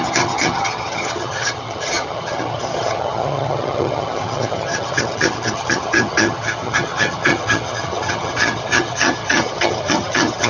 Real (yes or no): no